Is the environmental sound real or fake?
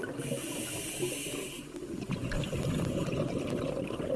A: real